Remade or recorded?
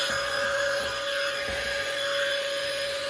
remade